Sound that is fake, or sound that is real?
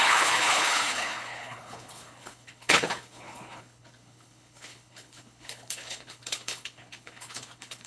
fake